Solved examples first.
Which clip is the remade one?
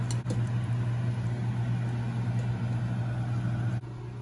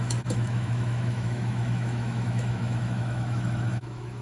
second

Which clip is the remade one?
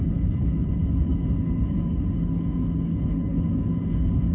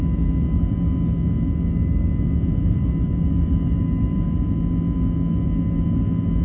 first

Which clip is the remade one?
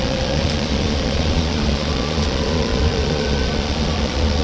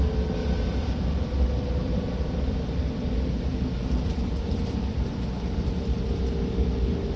first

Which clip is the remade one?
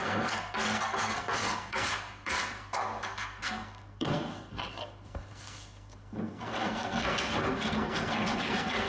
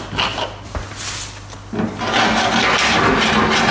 first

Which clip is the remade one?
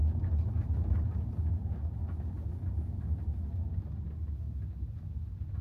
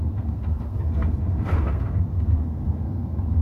second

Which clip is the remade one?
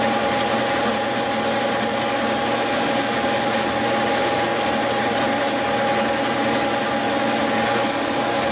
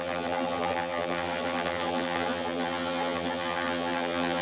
second